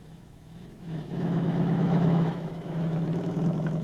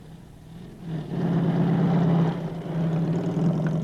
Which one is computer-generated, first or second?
first